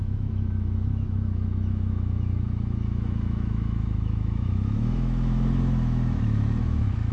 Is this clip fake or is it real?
fake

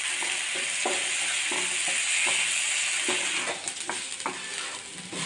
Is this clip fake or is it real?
real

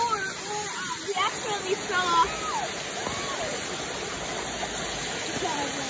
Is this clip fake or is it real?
real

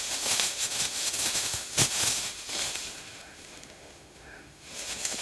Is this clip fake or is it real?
fake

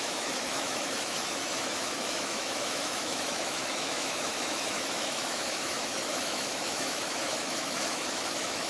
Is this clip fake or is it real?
fake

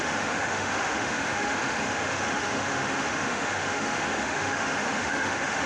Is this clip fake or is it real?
fake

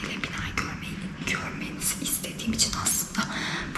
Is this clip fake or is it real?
real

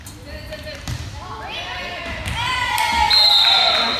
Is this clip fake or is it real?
real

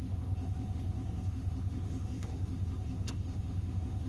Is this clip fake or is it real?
fake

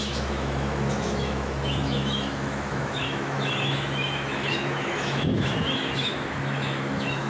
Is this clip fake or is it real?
fake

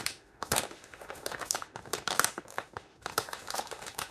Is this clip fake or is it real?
fake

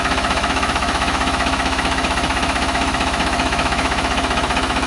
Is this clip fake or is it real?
fake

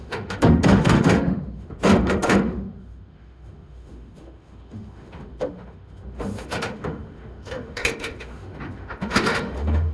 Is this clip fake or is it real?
fake